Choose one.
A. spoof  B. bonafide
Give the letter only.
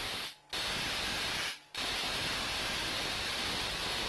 B